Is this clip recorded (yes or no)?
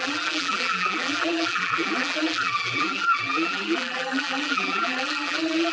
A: no